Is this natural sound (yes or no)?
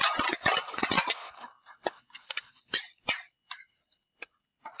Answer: yes